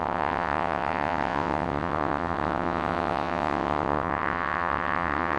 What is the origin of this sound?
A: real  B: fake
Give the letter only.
B